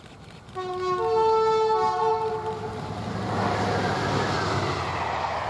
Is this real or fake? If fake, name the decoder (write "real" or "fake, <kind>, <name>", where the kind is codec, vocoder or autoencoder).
real